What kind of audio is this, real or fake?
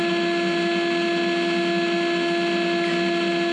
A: real